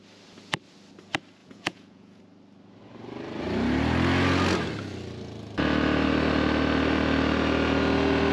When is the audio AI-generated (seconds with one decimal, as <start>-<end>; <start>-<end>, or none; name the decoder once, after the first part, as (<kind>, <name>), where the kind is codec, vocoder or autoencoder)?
1.4-2.2 (vocoder, Vocos)